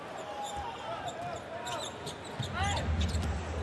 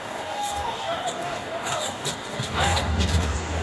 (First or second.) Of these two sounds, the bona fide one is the first